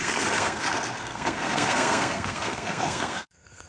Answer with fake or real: fake